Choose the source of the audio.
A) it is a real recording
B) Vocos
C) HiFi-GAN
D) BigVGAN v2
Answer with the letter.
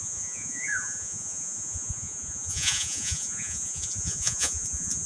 B